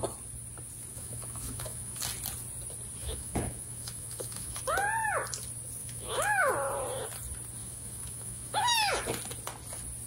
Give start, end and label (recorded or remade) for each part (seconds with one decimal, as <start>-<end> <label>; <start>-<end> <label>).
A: 0.0-0.9 recorded; 0.9-2.0 remade; 2.0-3.0 recorded; 3.0-4.6 remade; 4.6-5.8 recorded; 5.8-6.5 remade; 6.5-7.6 recorded; 7.6-8.9 remade; 8.9-10.1 recorded